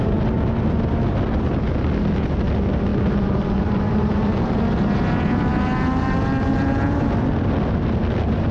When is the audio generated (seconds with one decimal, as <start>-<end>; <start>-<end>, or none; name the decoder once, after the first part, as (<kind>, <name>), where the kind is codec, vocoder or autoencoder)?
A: none